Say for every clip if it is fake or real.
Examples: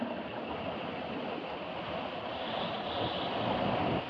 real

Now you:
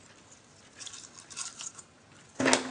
real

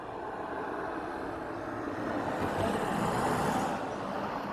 real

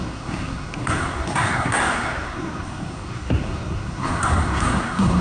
fake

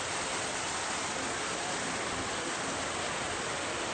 real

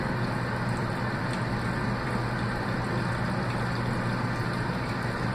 real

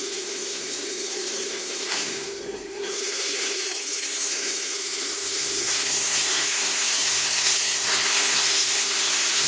fake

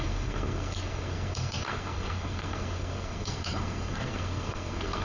fake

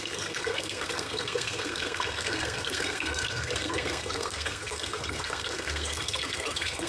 fake